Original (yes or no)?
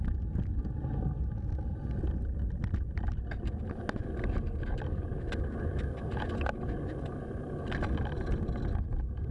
yes